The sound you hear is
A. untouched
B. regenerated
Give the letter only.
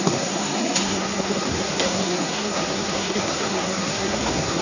B